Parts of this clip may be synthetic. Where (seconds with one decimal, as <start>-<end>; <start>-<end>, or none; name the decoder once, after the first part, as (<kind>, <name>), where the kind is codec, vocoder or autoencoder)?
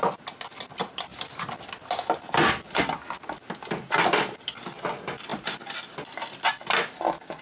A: none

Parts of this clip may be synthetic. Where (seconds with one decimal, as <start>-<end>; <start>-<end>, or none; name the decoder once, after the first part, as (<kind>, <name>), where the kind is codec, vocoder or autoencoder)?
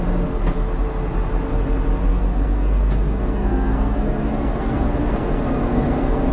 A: 2.1-6.3 (codec, SNAC)